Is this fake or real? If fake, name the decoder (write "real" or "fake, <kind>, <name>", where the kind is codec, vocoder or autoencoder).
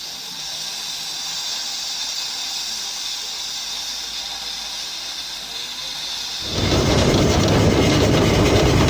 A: real